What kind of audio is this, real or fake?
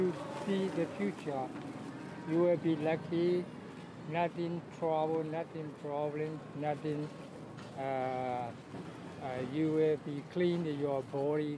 real